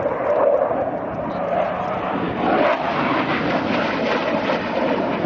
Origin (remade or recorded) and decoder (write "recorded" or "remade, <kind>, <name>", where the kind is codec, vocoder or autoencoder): recorded